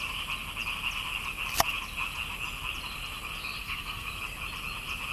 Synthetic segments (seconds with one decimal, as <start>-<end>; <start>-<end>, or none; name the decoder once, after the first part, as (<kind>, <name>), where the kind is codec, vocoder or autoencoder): 3.6-4.1 (codec, SNAC)

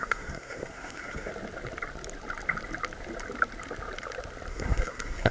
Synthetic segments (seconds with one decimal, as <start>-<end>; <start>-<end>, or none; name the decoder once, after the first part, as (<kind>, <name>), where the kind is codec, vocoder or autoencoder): 0.0-1.3 (codec, SNAC); 4.5-5.3

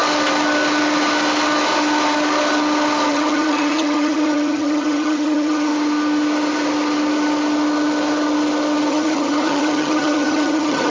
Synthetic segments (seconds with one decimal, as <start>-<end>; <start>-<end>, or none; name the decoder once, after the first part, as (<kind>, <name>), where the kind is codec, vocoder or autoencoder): 3.1-5.7 (vocoder, HiFi-GAN); 8.9-10.9

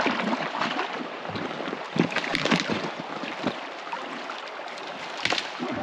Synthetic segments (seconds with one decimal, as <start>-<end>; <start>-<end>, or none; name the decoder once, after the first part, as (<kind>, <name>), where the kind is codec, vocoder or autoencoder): none

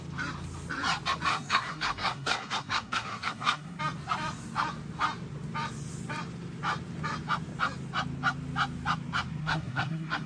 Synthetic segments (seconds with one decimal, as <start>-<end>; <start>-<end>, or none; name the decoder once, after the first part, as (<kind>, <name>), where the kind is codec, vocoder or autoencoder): 1.3-3.8 (codec, SNAC); 9.4-10.3

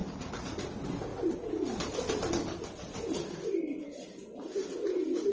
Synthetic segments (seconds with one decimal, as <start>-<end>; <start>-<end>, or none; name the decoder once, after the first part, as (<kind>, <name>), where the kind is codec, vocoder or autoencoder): 0.0-0.7 (vocoder, Vocos)